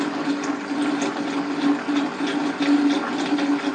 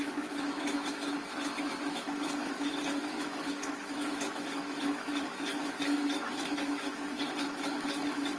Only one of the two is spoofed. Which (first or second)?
second